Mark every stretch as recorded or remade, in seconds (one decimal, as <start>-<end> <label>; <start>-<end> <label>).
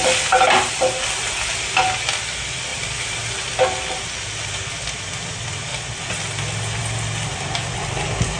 0.0-8.4 recorded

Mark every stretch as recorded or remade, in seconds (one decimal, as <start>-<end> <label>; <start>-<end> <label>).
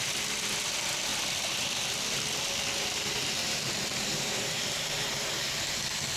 0.0-3.4 recorded; 3.4-5.5 remade; 5.5-6.2 recorded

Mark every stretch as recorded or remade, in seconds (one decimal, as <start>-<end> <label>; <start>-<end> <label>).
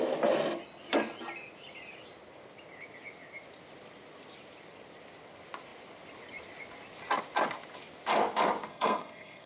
0.0-8.7 recorded; 8.7-9.5 remade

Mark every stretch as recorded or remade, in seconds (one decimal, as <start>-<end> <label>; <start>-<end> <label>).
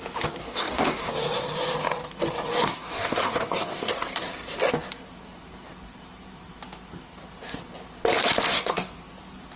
0.0-0.4 recorded; 0.4-1.1 remade; 1.1-2.5 recorded; 2.5-3.9 remade; 3.9-8.5 recorded; 8.5-9.0 remade; 9.0-9.6 recorded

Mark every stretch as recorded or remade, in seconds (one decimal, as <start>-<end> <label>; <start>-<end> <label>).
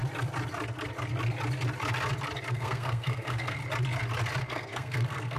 0.0-2.5 recorded; 2.5-3.6 remade; 3.6-4.4 recorded; 4.4-5.4 remade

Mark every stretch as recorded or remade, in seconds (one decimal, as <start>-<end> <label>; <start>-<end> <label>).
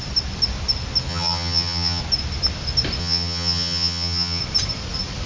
0.0-1.1 recorded; 1.1-2.0 remade; 2.0-3.0 recorded; 3.0-4.4 remade; 4.4-5.3 recorded